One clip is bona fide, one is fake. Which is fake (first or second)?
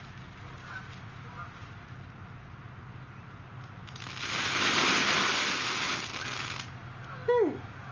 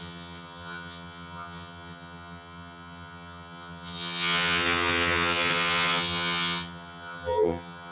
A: second